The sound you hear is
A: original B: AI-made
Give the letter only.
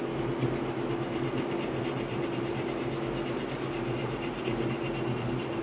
A